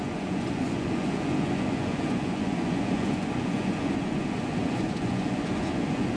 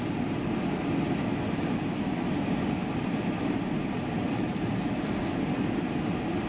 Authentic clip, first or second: second